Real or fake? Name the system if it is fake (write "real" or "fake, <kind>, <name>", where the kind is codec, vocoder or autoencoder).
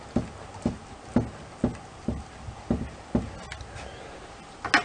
real